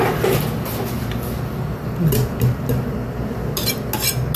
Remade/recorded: recorded